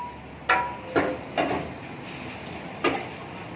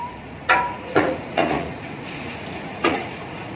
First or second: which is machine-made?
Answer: second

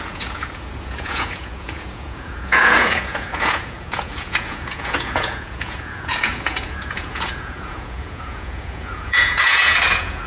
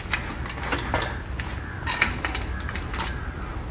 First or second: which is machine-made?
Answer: first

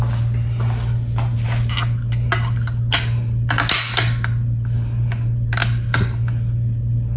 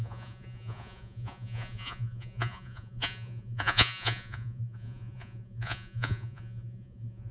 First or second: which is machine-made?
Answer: second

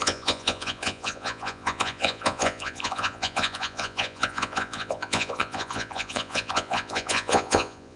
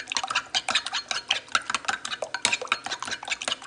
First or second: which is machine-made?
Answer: first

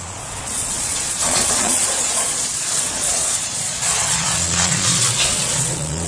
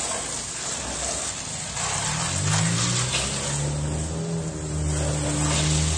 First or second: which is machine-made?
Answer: first